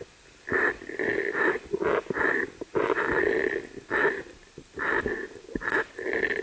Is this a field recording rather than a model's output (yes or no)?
yes